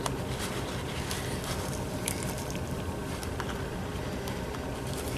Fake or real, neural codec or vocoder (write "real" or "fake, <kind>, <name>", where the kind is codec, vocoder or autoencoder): real